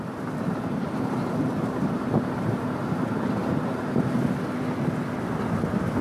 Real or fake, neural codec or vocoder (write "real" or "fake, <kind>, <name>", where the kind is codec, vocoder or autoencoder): real